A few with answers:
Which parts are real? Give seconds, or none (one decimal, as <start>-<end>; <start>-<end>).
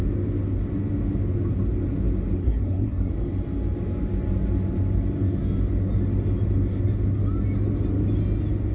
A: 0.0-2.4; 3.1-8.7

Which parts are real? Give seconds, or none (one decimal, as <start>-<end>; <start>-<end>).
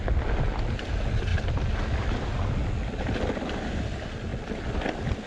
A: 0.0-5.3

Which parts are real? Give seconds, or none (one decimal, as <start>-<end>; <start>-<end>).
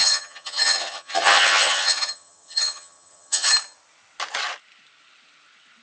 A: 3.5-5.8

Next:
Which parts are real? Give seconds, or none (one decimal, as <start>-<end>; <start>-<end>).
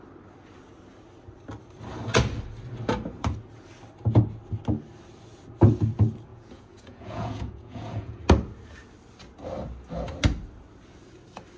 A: 0.0-6.3; 8.2-11.6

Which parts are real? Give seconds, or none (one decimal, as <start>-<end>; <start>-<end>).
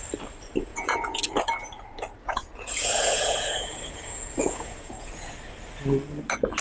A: 0.0-0.7; 1.2-2.2; 5.3-6.6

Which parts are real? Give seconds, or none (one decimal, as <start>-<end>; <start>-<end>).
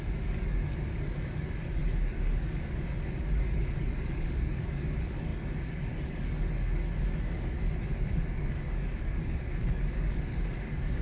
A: none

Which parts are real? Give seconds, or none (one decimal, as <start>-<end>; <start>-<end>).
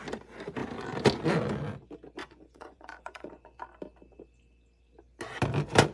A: 0.0-2.2; 3.6-5.9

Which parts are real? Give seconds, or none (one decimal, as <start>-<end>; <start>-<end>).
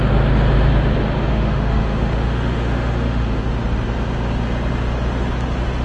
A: 0.0-1.3; 3.4-5.8